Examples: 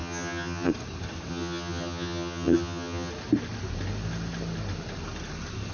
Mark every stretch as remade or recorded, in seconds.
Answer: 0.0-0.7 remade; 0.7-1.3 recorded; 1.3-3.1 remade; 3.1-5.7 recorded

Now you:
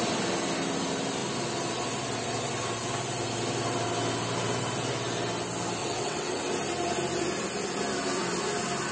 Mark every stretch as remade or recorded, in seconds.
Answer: 0.0-5.8 recorded; 5.8-6.4 remade; 6.4-8.9 recorded

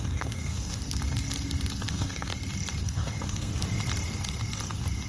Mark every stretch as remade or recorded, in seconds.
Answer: 0.0-0.8 remade; 0.8-1.9 recorded; 1.9-2.3 remade; 2.3-2.8 recorded; 2.8-3.5 remade; 3.5-5.1 recorded

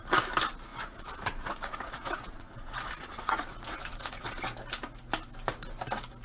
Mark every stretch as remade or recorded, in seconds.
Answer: 0.0-0.7 recorded; 0.7-4.4 remade; 4.4-6.2 recorded

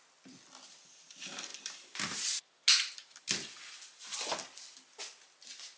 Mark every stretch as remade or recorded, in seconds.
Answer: 0.0-5.8 recorded